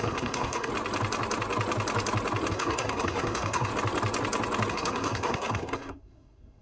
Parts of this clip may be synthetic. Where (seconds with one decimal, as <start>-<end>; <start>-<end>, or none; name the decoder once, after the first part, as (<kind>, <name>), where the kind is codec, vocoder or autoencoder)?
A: 0.0-0.7 (codec, SNAC); 2.5-3.7; 4.7-6.6